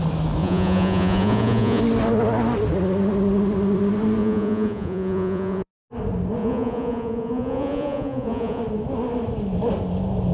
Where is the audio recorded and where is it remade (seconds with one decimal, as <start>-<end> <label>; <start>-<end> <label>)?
0.0-0.4 recorded; 0.4-1.8 remade; 1.8-4.2 recorded; 4.2-5.7 remade; 5.7-6.4 recorded; 6.4-8.6 remade; 8.6-10.3 recorded